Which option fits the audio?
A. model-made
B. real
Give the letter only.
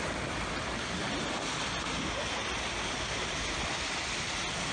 B